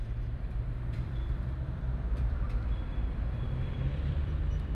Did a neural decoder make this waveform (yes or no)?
yes